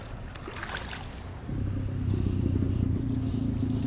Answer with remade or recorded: recorded